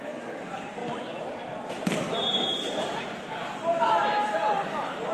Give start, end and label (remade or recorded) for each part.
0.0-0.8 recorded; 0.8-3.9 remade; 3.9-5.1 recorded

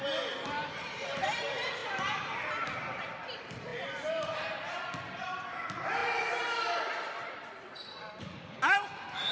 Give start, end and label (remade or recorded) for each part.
0.0-1.8 remade; 1.8-2.6 recorded; 2.6-9.3 remade